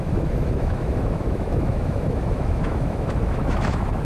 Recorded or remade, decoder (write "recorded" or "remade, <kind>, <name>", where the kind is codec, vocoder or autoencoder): remade, autoencoder, DAC-VAE